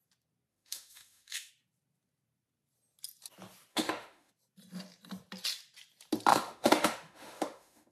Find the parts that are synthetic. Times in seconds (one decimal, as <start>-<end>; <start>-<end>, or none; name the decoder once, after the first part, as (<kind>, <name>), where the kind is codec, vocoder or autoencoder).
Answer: 0.5-1.5 (autoencoder, DAC-VAE); 3.7-4.3; 6.3-7.9